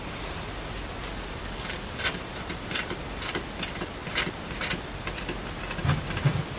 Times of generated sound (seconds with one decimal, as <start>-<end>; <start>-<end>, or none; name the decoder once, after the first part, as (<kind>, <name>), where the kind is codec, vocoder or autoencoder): 1.4-1.9 (codec, DAC)